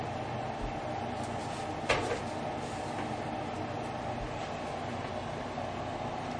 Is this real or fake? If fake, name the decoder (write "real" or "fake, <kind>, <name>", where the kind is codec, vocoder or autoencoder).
real